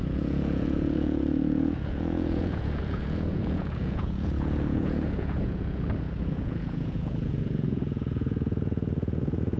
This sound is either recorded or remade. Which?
remade